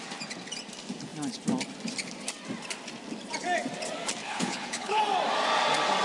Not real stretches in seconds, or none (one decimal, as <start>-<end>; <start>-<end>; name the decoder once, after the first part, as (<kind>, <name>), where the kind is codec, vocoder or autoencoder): 4.2-5.0 (codec, HILCodec)